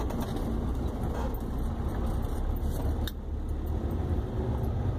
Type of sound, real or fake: real